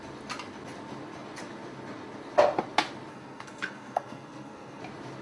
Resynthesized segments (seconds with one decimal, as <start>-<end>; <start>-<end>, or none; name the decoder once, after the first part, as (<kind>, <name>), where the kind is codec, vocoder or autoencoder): 3.1-4.8 (codec, SNAC)